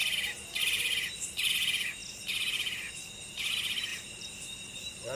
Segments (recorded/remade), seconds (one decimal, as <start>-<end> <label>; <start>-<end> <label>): 0.0-3.9 recorded; 3.9-5.2 remade